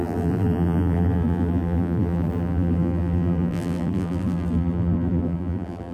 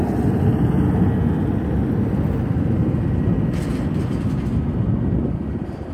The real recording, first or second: second